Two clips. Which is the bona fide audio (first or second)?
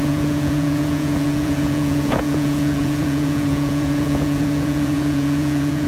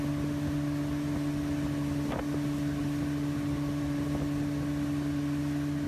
second